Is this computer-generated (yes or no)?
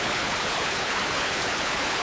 yes